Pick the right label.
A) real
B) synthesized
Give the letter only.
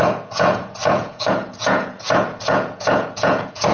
B